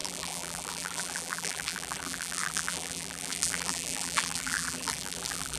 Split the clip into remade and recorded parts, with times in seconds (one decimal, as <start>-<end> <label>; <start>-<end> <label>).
0.0-5.6 remade